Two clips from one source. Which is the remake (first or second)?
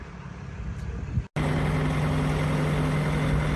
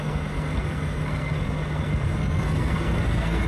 second